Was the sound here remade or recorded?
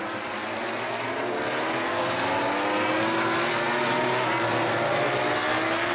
recorded